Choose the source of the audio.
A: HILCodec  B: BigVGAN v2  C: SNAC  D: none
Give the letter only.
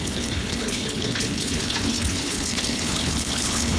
A